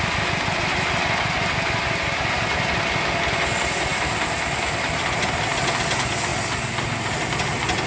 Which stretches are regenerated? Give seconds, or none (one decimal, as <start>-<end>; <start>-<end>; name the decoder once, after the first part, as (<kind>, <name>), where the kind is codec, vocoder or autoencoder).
none